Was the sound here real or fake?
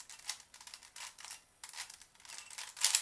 real